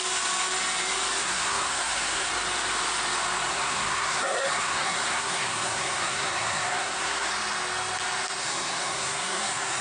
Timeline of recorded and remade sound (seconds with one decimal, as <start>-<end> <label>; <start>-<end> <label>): 0.0-1.2 recorded; 1.2-2.3 remade; 2.3-3.5 recorded; 3.5-7.3 remade; 7.3-8.4 recorded; 8.4-9.8 remade